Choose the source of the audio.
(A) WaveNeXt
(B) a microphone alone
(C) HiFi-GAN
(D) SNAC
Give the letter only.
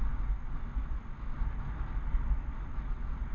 B